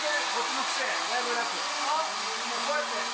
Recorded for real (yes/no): yes